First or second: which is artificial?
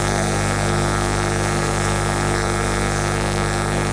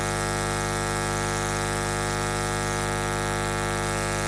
first